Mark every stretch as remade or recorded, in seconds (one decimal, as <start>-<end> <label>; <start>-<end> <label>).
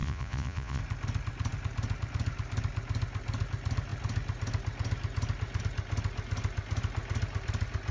0.0-0.8 remade; 0.8-7.9 recorded